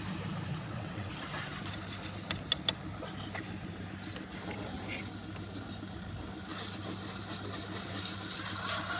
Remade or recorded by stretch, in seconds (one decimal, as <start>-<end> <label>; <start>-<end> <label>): 0.0-0.5 recorded; 0.5-1.1 remade; 1.1-9.0 recorded